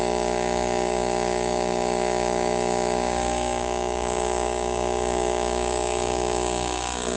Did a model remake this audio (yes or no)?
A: yes